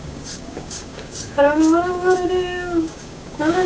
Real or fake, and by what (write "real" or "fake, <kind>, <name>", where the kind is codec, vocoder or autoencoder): fake, codec, DAC